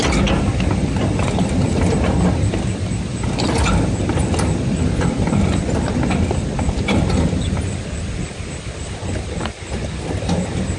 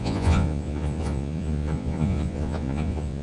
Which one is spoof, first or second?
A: second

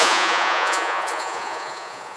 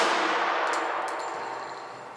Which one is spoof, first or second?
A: first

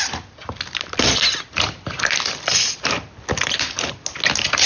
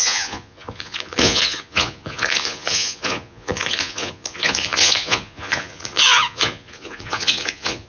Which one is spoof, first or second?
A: second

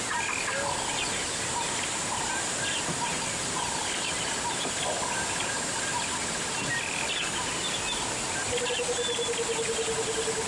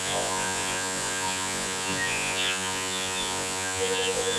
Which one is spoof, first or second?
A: second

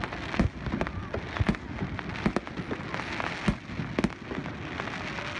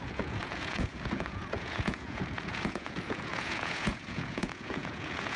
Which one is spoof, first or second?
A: second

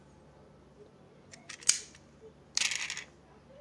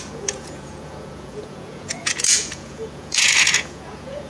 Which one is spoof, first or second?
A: second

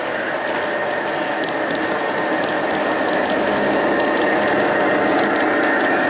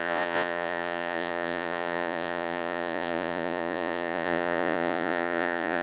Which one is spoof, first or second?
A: second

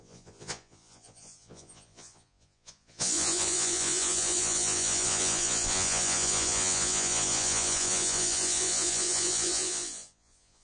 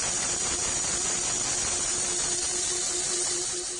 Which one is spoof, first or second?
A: first